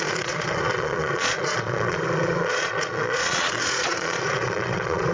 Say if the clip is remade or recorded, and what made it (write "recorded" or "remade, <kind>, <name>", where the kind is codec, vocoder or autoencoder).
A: remade, vocoder, Vocos